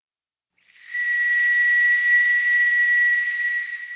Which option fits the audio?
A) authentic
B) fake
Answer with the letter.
A